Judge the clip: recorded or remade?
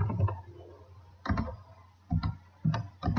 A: recorded